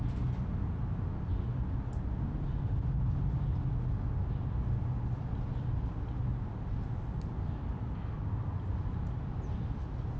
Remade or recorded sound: recorded